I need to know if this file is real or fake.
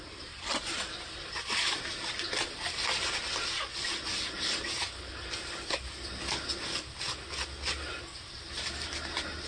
real